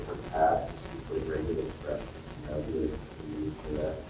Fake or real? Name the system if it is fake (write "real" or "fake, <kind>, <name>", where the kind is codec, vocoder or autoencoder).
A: real